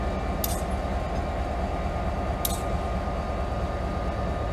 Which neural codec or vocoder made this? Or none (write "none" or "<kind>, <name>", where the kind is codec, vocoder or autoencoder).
none